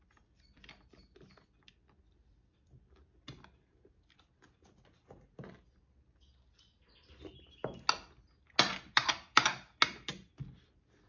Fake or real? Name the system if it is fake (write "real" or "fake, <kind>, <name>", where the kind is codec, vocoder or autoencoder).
real